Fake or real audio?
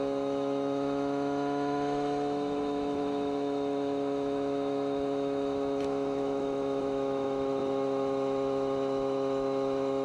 fake